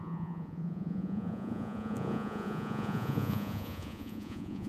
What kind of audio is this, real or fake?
fake